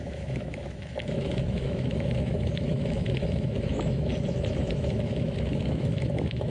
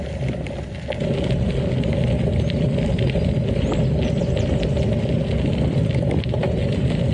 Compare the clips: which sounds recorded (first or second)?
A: second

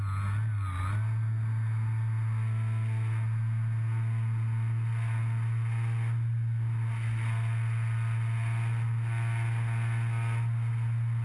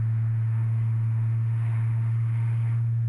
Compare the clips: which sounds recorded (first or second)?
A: first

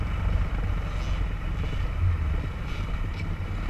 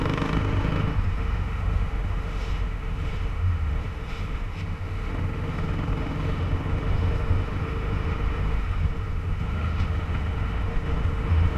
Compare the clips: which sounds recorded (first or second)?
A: first